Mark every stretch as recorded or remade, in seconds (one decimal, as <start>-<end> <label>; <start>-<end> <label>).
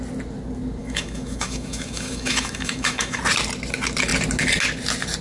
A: 0.0-0.8 recorded; 0.8-3.2 remade; 3.2-5.2 recorded